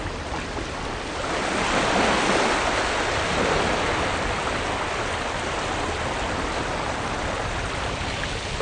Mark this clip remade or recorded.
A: recorded